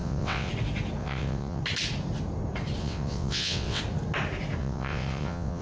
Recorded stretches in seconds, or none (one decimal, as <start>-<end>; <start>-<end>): 0.5-1.0; 1.6-2.8; 3.8-4.6